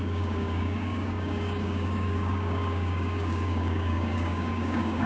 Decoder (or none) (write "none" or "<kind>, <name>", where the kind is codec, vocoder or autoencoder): codec, DAC